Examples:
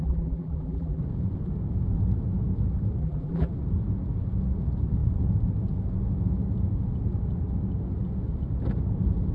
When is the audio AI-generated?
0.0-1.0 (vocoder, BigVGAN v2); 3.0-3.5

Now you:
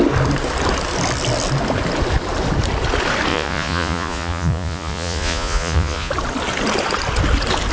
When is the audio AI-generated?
3.3-6.1 (vocoder, Vocos)